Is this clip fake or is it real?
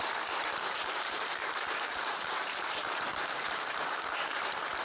fake